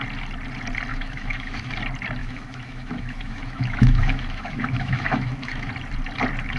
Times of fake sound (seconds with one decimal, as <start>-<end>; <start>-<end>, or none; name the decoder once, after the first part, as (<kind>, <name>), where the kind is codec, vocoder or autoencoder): 0.9-1.7 (autoencoder, DAC-VAE); 2.2-5.7